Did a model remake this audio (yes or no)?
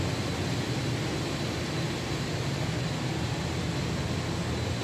no